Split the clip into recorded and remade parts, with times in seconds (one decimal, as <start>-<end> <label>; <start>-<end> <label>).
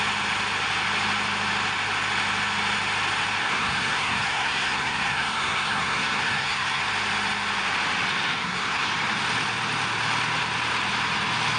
0.0-3.4 recorded; 3.4-6.8 remade; 6.8-8.4 recorded; 8.4-8.9 remade; 8.9-11.6 recorded